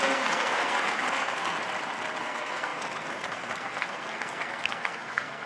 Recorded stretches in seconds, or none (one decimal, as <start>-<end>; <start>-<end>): 1.6-2.2